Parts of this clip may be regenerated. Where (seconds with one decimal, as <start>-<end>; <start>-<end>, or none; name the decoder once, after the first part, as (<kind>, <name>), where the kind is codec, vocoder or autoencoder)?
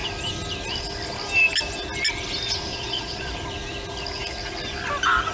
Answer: 2.7-3.3 (vocoder, Vocos)